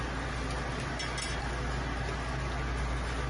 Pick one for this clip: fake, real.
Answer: real